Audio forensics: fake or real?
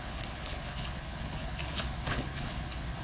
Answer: fake